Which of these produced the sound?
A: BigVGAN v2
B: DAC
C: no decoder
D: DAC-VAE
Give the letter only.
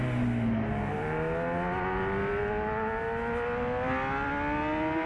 C